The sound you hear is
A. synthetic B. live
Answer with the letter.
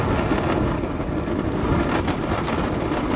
B